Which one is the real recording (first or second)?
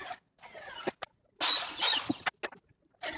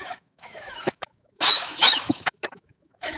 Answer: first